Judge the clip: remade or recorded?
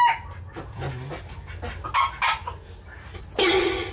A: recorded